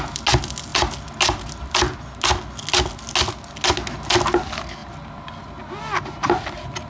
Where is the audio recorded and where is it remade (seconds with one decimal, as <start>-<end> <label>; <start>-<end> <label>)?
0.0-6.9 recorded